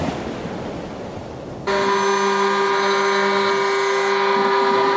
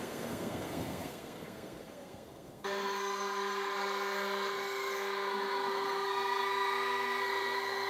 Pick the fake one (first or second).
second